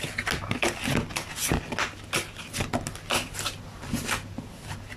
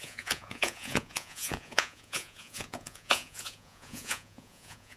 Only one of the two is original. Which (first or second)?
first